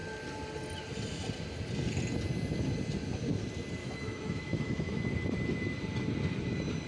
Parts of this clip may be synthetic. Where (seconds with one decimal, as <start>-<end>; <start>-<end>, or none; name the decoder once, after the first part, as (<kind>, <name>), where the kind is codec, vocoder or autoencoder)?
3.8-5.0 (autoencoder, DAC-VAE)